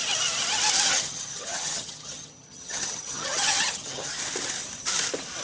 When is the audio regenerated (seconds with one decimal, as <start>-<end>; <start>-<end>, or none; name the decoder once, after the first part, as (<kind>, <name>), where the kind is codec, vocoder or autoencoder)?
0.9-4.1 (vocoder, HiFi-GAN)